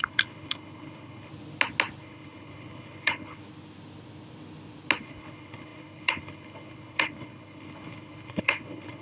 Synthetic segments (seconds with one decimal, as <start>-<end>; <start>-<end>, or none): 0.0-1.3; 2.0-3.4; 5.0-9.0